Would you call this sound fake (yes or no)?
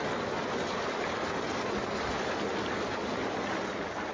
no